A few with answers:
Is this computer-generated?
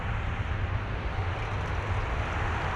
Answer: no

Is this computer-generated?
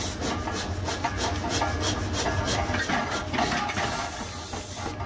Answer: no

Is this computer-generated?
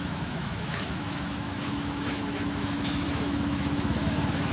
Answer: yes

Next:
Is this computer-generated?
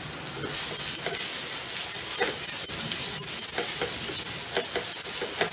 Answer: no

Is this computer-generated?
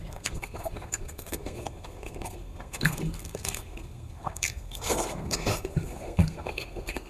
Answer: yes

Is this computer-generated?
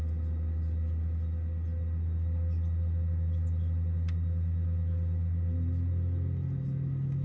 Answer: no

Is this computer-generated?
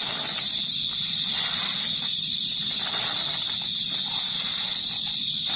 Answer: no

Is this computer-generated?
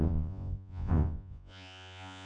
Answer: yes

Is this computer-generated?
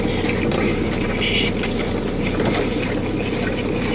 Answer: no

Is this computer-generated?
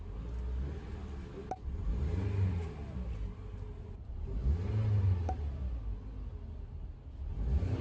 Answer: no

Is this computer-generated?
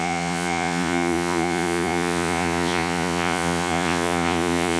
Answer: yes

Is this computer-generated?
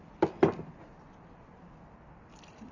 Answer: no